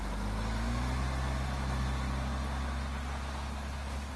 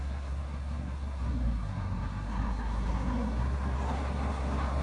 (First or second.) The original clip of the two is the first